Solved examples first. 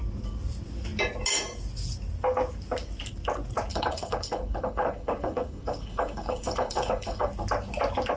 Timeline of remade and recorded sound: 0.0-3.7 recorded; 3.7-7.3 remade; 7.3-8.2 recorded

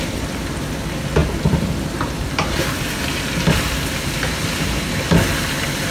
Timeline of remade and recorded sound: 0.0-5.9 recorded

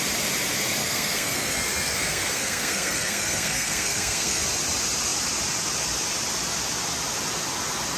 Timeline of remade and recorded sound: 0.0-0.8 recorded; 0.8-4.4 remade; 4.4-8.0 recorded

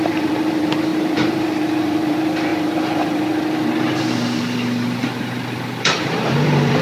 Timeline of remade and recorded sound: 0.0-6.8 remade

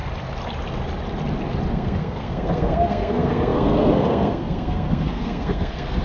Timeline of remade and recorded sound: 0.0-1.7 recorded; 1.7-6.0 remade

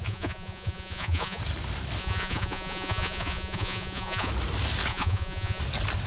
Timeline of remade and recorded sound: 0.0-1.4 remade; 1.4-2.0 recorded; 2.0-4.3 remade; 4.3-4.9 recorded; 4.9-5.6 remade; 5.6-6.1 recorded

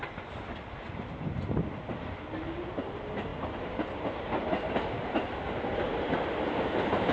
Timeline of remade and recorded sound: 0.0-7.1 recorded